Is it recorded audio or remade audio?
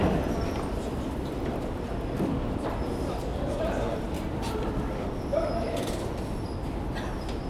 remade